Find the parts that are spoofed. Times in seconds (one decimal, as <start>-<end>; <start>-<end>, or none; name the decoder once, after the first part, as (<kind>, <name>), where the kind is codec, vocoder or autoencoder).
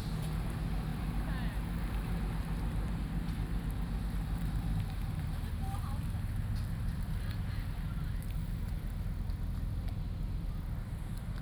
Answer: 6.5-8.1 (vocoder, BigVGAN v2)